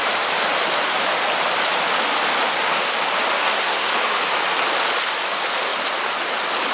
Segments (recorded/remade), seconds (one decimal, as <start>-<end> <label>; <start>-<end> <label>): 0.0-3.4 recorded; 3.4-3.9 remade; 3.9-6.7 recorded